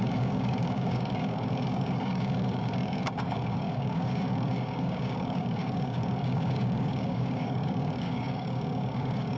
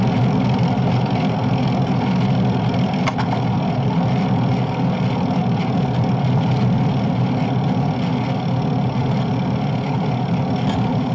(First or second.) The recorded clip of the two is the second